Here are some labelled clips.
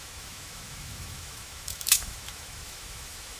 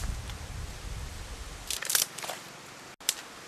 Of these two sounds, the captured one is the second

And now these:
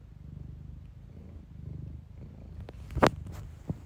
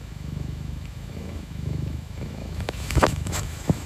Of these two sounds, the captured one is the first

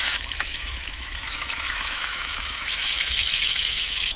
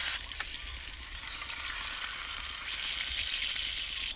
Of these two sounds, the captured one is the second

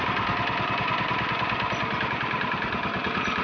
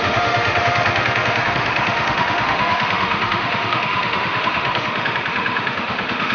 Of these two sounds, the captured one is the first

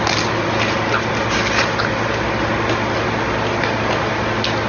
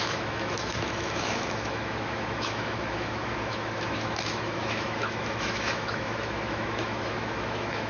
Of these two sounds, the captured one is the first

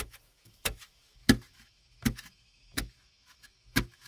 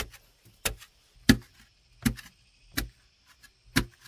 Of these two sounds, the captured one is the second